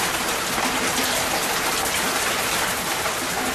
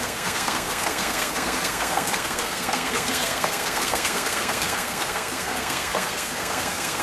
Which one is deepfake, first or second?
second